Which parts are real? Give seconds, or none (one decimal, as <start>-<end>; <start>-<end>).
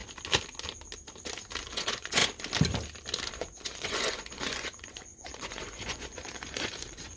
0.0-1.6; 2.2-3.3